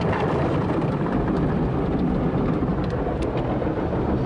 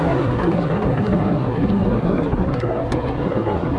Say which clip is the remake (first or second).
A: second